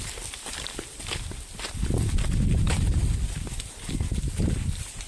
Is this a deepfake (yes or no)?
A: no